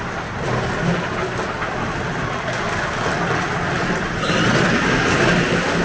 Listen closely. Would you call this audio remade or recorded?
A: recorded